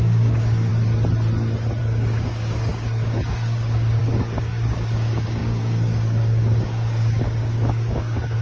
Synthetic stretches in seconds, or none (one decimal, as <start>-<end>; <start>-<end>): 0.0-0.7; 1.8-8.4